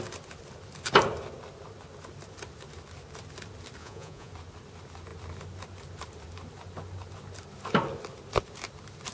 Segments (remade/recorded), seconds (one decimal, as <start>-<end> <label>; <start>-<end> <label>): 0.0-3.8 recorded; 3.8-4.3 remade; 4.3-9.1 recorded